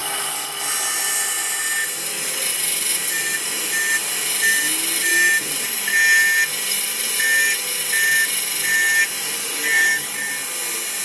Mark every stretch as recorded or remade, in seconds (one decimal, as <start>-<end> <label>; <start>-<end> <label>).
0.0-9.4 recorded; 9.4-10.3 remade; 10.3-11.0 recorded